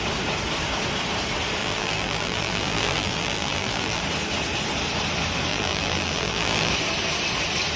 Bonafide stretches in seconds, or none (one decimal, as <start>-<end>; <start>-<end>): 0.0-1.6; 4.0-5.5; 6.7-7.8